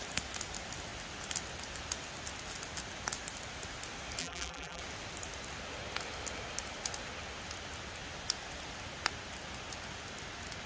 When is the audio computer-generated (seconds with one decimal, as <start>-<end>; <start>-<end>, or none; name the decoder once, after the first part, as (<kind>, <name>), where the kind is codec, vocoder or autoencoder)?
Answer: 4.2-4.8 (vocoder, BigVGAN v2)